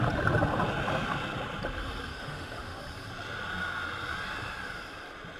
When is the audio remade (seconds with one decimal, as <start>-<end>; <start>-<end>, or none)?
2.1-2.8